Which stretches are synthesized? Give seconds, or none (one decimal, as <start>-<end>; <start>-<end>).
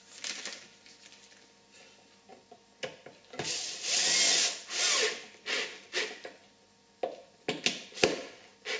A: none